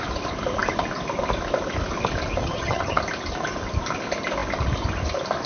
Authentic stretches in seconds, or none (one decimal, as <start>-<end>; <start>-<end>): 0.0-2.4; 3.0-5.5